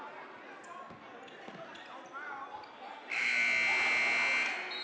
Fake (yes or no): no